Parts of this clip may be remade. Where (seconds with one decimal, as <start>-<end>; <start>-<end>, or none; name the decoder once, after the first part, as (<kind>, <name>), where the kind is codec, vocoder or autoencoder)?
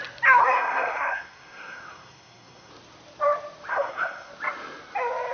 0.4-2.7 (codec, SNAC); 3.7-4.3